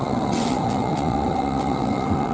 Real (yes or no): no